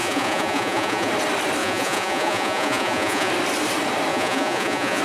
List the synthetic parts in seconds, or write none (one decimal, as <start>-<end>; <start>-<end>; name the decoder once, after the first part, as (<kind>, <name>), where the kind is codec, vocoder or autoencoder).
0.0-1.1 (vocoder, Vocos); 1.6-3.3; 4.1-5.0